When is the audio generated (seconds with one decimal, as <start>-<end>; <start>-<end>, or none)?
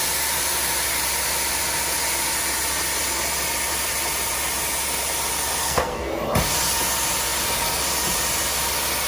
5.6-6.2